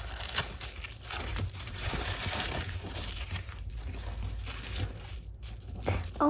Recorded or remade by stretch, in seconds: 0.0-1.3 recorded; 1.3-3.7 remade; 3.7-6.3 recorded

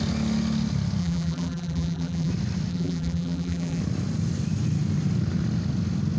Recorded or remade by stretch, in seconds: 0.0-1.0 recorded; 1.0-2.3 remade; 2.3-2.7 recorded; 2.7-3.8 remade; 3.8-6.2 recorded

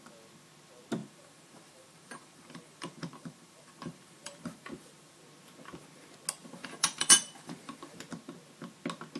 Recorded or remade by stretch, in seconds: 0.0-1.0 recorded; 1.0-5.2 remade; 5.2-6.4 recorded; 6.4-8.0 remade; 8.0-9.2 recorded

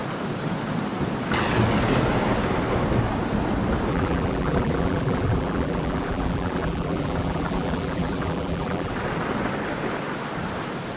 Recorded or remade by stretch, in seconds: 0.0-3.9 recorded; 3.9-8.9 remade; 8.9-11.0 recorded

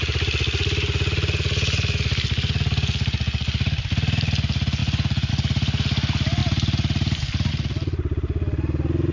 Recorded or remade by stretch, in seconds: 0.0-4.8 recorded; 4.8-5.3 remade; 5.3-6.4 recorded; 6.4-7.5 remade; 7.5-9.1 recorded